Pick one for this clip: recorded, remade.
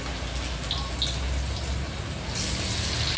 recorded